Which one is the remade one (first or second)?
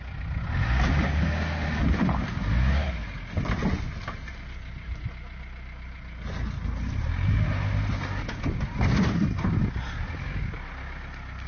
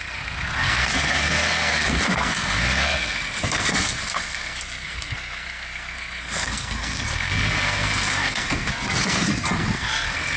second